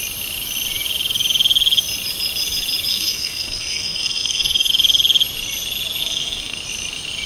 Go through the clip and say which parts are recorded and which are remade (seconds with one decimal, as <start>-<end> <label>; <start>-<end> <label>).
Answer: 0.0-2.9 recorded; 2.9-4.7 remade; 4.7-6.0 recorded; 6.0-6.6 remade; 6.6-7.3 recorded